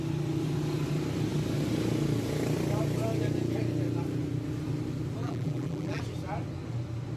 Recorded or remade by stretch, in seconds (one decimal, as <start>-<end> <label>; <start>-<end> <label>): 0.0-5.2 recorded; 5.2-6.0 remade; 6.0-7.2 recorded

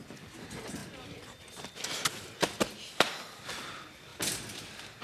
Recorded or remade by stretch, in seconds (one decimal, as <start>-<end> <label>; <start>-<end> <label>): 0.0-2.7 recorded; 2.7-3.6 remade; 3.6-4.1 recorded; 4.1-5.0 remade